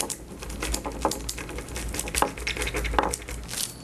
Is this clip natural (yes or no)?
yes